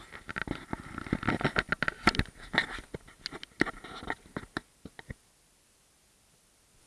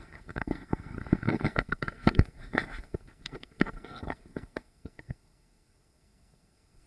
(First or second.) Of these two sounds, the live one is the first